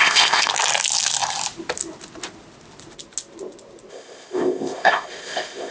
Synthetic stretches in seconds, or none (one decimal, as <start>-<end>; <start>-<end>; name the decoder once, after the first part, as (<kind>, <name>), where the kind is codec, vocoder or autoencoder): 0.0-0.5 (codec, ZipCodec); 3.9-5.7